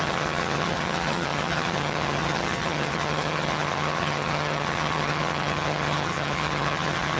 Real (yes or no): no